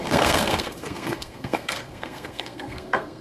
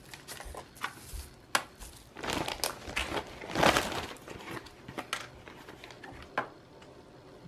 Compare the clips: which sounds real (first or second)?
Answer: second